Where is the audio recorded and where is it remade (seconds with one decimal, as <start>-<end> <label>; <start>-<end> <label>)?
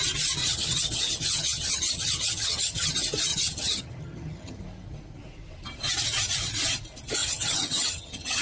0.0-0.4 recorded; 0.4-2.9 remade; 2.9-3.3 recorded; 3.3-4.6 remade; 4.6-7.2 recorded; 7.2-8.4 remade